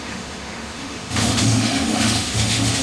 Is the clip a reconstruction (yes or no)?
yes